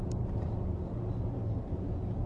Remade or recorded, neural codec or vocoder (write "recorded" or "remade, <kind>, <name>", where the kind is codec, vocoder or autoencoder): recorded